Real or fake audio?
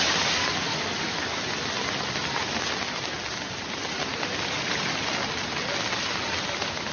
real